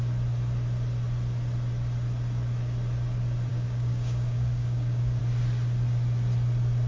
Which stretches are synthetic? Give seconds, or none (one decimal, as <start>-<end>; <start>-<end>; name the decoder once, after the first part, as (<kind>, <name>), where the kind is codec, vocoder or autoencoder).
3.5-5.2 (codec, DAC)